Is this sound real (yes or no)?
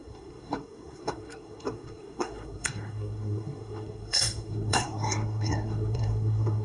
no